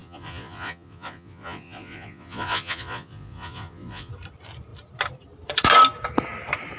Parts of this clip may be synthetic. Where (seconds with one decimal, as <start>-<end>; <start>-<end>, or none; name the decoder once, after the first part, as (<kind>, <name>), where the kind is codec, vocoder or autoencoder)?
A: 0.0-4.1 (vocoder, Vocos)